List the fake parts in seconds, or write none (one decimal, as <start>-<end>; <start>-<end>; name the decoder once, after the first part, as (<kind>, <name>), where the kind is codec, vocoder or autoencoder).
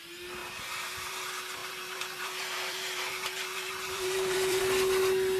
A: 0.4-1.2 (vocoder, BigVGAN v2); 1.6-4.6